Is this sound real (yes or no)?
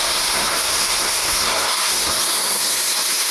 no